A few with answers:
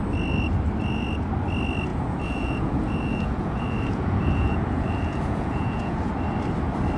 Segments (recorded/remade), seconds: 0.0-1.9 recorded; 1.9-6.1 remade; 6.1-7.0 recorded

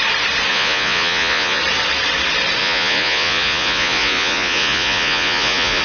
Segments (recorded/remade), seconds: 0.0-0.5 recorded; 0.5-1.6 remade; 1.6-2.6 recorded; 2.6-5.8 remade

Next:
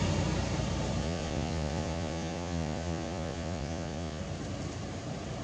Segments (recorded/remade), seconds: 0.0-1.0 recorded; 1.0-4.2 remade; 4.2-5.4 recorded

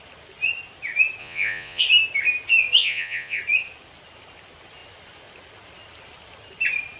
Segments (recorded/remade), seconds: 0.0-1.2 recorded; 1.2-1.8 remade; 1.8-2.8 recorded; 2.8-3.4 remade; 3.4-7.0 recorded

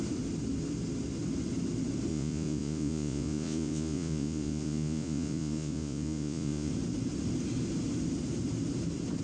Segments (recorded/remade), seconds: 0.0-2.1 recorded; 2.1-6.7 remade; 6.7-9.2 recorded

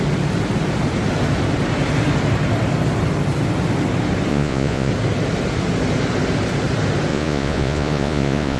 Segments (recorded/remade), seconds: 0.0-4.3 recorded; 4.3-4.9 remade; 4.9-7.1 recorded; 7.1-8.6 remade

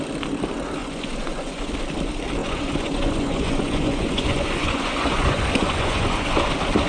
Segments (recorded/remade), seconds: 0.0-0.8 recorded; 0.8-1.7 remade; 1.7-2.4 recorded; 2.4-6.5 remade; 6.5-6.9 recorded